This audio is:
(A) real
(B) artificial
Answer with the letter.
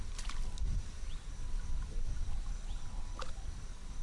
A